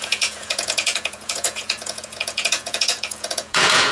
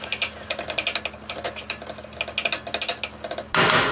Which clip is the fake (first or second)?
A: first